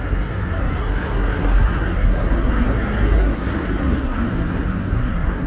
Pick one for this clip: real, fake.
fake